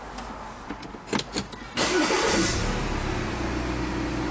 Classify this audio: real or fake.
real